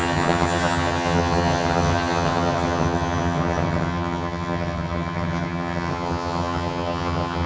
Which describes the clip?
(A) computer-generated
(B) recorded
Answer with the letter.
A